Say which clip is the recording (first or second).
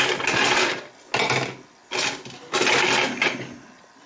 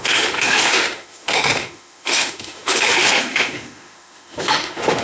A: first